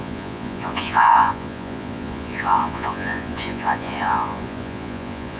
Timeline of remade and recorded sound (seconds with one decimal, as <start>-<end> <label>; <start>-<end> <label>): 0.0-5.4 remade